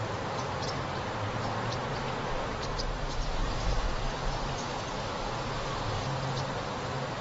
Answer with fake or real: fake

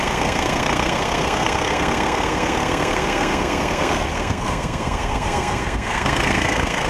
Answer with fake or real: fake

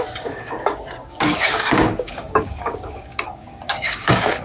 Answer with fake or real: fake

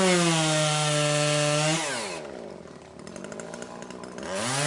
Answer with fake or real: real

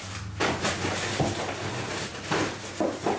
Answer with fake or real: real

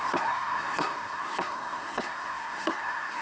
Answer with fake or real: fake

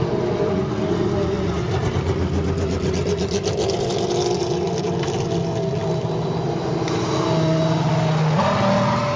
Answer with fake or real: real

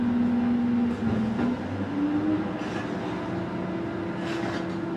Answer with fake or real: real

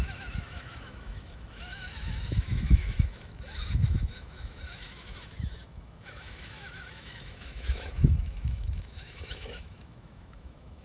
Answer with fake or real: fake